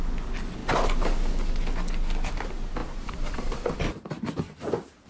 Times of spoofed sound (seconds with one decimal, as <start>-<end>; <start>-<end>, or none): 2.8-3.8